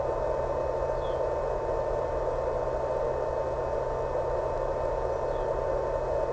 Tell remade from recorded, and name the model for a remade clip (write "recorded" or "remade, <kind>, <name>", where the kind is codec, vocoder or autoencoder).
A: recorded